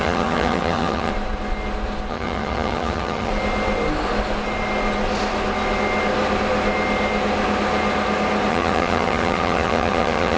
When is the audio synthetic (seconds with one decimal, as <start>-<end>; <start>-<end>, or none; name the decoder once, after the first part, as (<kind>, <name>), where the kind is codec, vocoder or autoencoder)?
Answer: 0.0-1.1 (vocoder, HiFi-GAN); 2.1-3.3; 8.5-10.4